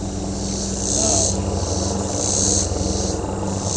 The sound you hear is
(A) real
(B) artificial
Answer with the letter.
A